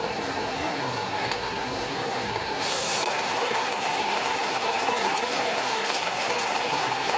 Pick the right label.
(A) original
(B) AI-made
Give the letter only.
B